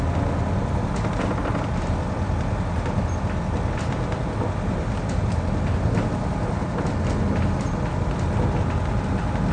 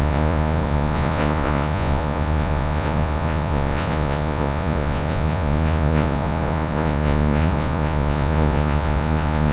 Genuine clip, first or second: first